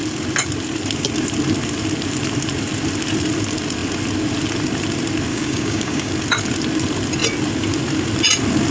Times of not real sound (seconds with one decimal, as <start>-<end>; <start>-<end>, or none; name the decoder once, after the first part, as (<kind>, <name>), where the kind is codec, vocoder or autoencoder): 5.3-6.1 (codec, DAC)

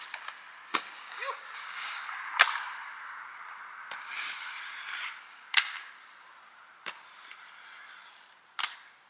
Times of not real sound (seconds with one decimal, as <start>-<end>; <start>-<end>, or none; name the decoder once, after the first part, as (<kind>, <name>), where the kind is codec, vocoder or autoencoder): 0.7-2.0 (codec, DAC); 5.2-5.9

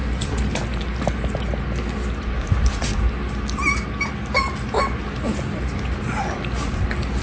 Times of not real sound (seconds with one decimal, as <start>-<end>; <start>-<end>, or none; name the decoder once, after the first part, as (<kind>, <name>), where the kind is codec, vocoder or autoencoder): none

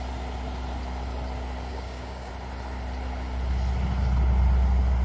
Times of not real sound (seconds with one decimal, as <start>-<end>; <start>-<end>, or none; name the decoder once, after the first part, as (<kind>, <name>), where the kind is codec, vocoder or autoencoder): 1.7-2.3 (codec, DAC)

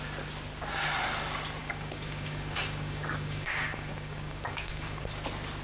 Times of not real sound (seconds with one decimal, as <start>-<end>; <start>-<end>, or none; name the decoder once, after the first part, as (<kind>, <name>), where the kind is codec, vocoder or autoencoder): 1.6-5.0 (codec, DAC)

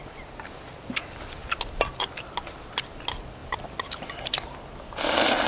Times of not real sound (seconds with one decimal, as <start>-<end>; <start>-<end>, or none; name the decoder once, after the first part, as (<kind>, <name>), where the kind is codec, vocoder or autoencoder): none

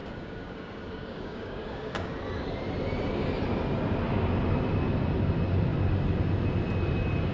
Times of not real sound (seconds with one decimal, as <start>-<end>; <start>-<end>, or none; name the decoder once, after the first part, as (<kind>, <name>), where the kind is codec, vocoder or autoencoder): 0.0-2.1 (codec, DAC)